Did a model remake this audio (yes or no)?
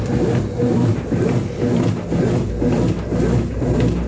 no